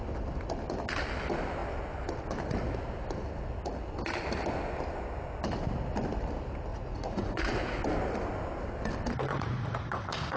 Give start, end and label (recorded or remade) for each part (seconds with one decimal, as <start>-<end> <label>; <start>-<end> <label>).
0.0-6.7 recorded; 6.7-7.8 remade; 7.8-9.3 recorded; 9.3-10.4 remade